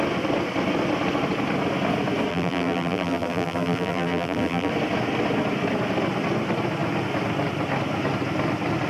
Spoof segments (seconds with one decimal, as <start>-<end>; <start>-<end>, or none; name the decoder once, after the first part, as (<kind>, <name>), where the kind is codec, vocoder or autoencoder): 2.3-4.7 (vocoder, BigVGAN v2)